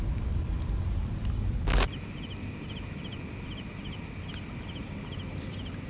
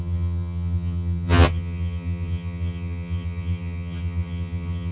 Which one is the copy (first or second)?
second